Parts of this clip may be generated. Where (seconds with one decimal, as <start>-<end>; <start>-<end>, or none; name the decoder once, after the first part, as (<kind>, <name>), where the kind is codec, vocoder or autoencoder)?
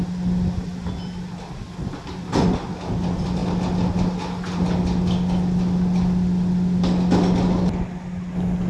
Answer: none